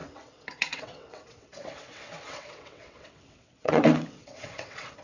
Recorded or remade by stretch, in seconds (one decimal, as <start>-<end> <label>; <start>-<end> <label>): 0.0-5.0 remade